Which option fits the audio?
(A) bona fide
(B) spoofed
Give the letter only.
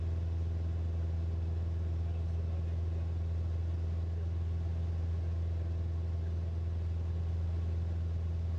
A